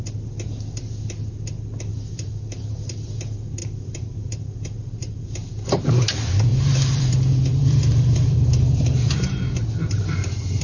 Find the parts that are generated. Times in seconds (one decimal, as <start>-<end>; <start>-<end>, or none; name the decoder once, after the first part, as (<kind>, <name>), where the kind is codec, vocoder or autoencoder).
1.9-3.2 (vocoder, BigVGAN v2); 3.6-5.5; 6.5-9.6